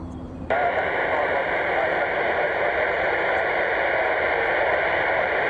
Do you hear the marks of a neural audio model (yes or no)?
yes